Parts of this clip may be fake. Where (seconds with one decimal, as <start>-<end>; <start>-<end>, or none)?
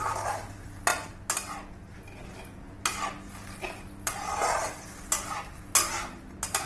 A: none